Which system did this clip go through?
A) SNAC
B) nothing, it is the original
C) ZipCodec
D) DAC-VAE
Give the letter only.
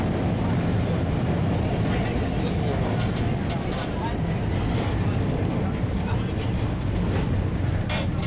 B